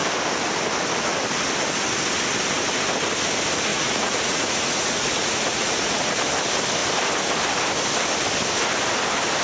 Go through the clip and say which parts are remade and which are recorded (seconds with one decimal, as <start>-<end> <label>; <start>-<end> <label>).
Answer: 0.0-3.7 recorded; 3.7-6.1 remade; 6.1-9.4 recorded